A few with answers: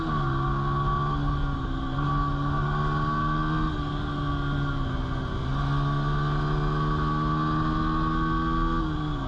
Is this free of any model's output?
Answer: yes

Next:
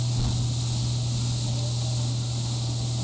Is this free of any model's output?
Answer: yes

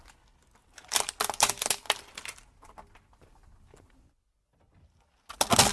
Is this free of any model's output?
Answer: yes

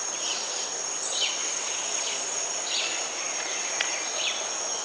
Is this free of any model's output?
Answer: yes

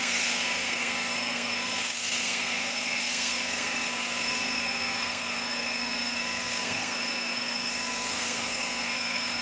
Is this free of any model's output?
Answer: no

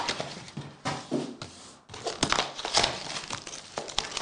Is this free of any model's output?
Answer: yes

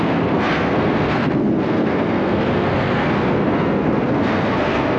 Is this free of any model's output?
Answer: no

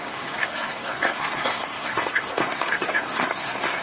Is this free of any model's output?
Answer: no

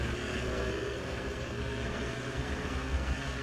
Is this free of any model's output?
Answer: no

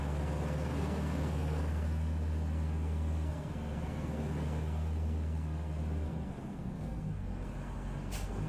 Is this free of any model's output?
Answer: no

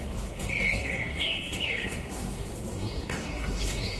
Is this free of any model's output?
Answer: no